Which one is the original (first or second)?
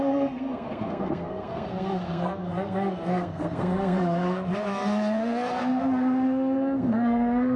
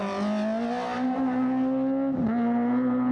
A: second